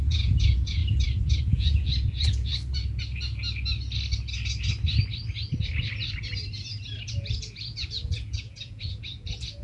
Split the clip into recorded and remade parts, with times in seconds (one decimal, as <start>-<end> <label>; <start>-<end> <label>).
0.0-0.8 remade; 0.8-1.4 recorded; 1.4-2.5 remade; 2.5-7.1 recorded; 7.1-9.6 remade